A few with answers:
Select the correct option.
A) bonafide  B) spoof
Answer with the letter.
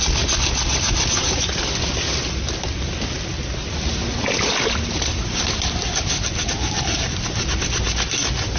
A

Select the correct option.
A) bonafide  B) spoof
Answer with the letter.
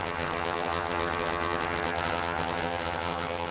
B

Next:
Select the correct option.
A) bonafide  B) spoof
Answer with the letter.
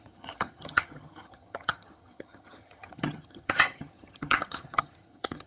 B